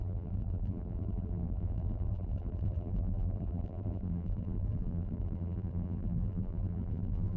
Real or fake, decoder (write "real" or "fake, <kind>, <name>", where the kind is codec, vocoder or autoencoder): fake, vocoder, BigVGAN v2